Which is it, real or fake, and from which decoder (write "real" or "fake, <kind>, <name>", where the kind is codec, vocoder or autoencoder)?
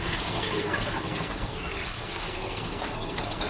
fake, codec, SNAC